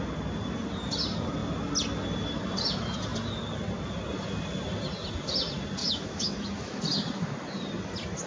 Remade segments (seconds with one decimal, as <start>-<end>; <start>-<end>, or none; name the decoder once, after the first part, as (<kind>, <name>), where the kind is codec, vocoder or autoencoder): 5.8-6.8 (autoencoder, DAC-VAE)